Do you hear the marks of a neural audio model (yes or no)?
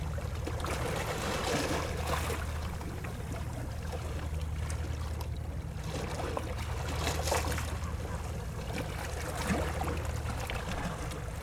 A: no